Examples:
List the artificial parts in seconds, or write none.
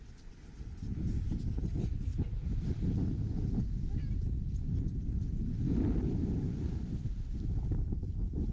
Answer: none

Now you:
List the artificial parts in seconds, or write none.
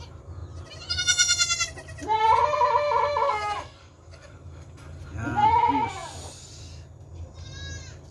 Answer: 3.3-5.0 (codec, DAC)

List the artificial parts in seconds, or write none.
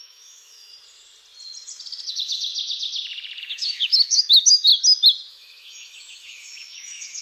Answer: 0.0-0.7 (autoencoder, DAC-VAE); 2.1-2.5; 3.4-4.7; 5.3-7.2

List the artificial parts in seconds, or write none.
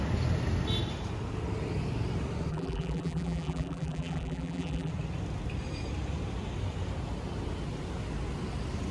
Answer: 2.5-4.9 (vocoder, BigVGAN v2)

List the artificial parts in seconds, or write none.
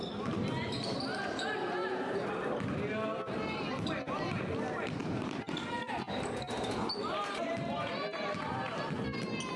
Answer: 1.1-2.3 (vocoder, BigVGAN v2); 5.0-7.8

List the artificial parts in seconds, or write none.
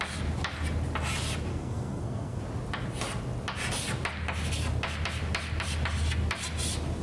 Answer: 1.5-2.4 (codec, SNAC)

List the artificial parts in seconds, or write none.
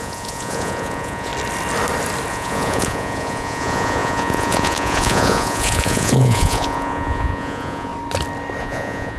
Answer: 0.0-1.3 (vocoder, Vocos); 2.3-7.9; 8.6-9.2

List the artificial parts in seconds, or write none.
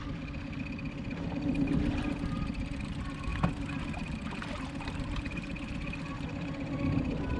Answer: none